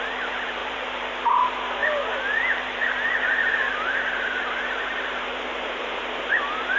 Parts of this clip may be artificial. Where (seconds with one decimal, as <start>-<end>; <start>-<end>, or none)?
0.0-6.8